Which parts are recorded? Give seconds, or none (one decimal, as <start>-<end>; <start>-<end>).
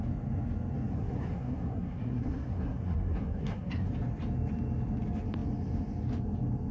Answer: 0.0-0.9; 3.9-6.7